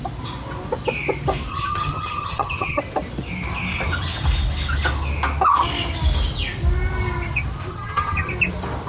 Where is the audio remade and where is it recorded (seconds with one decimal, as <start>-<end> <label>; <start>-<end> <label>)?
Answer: 0.0-1.5 recorded; 1.5-2.8 remade; 2.8-7.7 recorded; 7.7-8.3 remade; 8.3-8.9 recorded